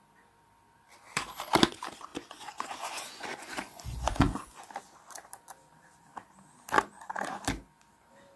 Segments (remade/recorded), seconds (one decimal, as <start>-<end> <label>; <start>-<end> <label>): 0.0-2.1 recorded; 2.1-4.6 remade; 4.6-8.4 recorded